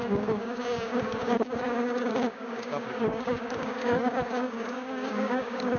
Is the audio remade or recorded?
remade